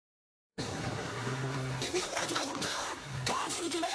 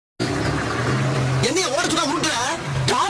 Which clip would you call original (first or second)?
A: second